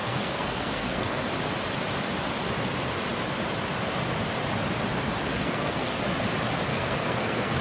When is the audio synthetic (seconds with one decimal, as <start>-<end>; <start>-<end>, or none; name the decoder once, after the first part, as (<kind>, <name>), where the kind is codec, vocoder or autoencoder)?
0.0-1.3 (codec, SNAC); 5.3-6.0; 6.7-7.6